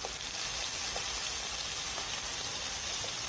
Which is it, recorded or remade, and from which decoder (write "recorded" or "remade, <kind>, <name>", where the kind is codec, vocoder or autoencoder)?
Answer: recorded